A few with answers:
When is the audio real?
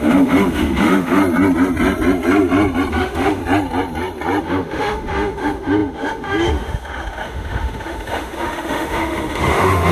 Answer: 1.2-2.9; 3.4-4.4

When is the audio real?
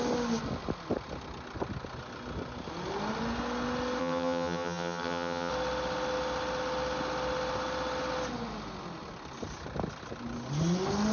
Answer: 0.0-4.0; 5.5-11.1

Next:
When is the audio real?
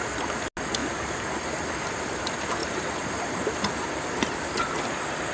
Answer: 0.0-0.8; 2.2-2.6; 4.5-5.3